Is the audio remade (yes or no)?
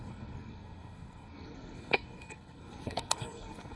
yes